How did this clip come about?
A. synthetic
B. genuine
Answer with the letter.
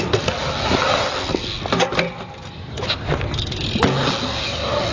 B